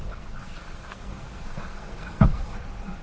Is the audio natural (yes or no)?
no